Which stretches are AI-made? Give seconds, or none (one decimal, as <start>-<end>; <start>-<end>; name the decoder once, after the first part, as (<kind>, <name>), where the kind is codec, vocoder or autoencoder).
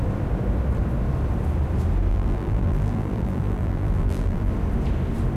2.1-4.5 (vocoder, BigVGAN v2)